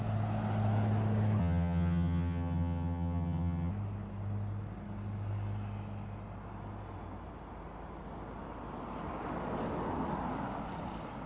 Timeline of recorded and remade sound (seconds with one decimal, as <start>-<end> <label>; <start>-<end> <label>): 0.0-1.4 recorded; 1.4-3.7 remade; 3.7-11.3 recorded